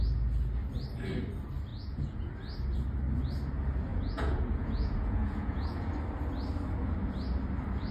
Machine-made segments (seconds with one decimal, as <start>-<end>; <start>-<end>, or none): 1.7-2.3; 3.9-5.9